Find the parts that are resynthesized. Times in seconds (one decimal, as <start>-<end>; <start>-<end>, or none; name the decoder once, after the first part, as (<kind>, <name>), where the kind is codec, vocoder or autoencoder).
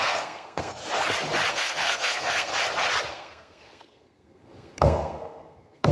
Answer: 0.0-0.8 (codec, SNAC); 1.5-2.5; 3.1-5.9